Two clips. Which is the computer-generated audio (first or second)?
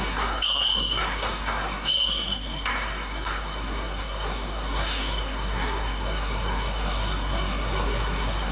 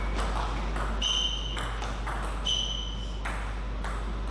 first